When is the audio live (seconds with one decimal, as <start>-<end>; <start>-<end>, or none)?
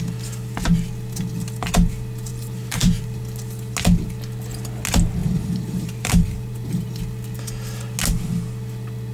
0.0-2.3; 3.0-5.2; 6.9-9.1